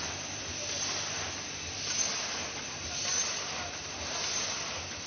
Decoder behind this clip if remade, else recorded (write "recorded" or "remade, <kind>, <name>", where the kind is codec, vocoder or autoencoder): recorded